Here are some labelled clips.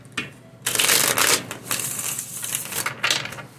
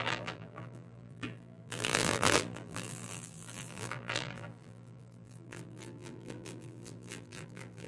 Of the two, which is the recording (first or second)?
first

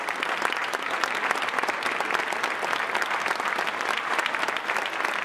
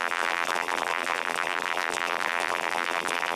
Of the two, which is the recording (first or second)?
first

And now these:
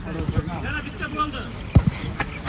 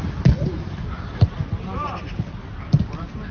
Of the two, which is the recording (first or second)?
second